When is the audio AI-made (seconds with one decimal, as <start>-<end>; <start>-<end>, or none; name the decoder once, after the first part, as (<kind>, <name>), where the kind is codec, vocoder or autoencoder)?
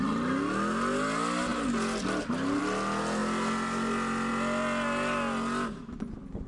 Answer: none